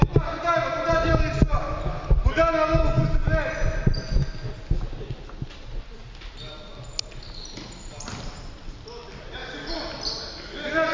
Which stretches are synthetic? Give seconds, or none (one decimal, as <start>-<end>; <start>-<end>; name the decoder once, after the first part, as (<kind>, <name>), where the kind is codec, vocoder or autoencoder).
none